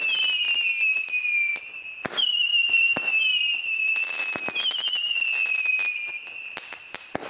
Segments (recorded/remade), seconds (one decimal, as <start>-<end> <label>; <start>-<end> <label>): 0.0-7.3 recorded